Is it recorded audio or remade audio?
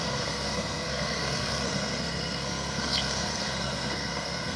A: remade